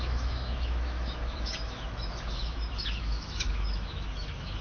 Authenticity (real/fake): fake